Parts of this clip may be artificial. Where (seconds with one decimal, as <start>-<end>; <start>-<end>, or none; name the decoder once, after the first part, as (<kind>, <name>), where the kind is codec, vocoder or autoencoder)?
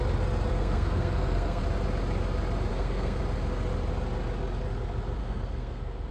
0.5-1.6 (codec, SNAC); 2.7-3.2; 5.2-6.1